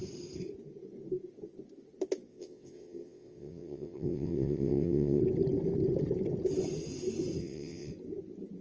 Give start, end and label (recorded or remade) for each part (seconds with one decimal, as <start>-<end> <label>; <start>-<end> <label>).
0.0-2.3 recorded; 2.3-5.2 remade; 5.2-7.4 recorded; 7.4-7.9 remade; 7.9-8.6 recorded